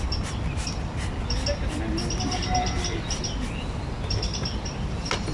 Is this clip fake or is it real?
real